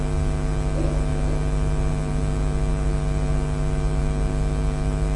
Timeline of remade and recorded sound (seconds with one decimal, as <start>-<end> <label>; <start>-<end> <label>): 0.0-5.2 recorded